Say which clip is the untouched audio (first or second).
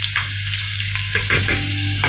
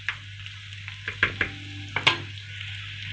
second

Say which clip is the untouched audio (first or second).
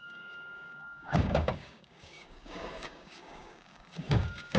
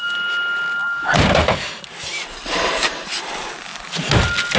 second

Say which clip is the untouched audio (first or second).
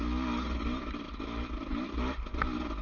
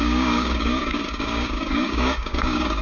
first